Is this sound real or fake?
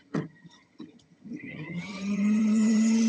fake